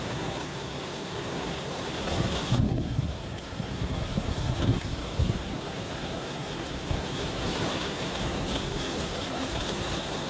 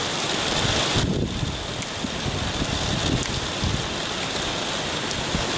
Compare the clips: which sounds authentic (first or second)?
second